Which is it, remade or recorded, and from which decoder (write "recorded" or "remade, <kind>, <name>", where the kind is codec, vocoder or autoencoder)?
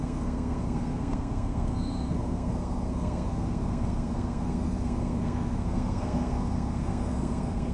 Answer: remade, codec, SNAC